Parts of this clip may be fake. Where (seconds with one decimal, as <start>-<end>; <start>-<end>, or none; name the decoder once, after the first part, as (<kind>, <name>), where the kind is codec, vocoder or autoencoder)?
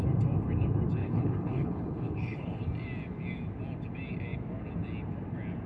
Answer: 1.0-2.6 (codec, HILCodec)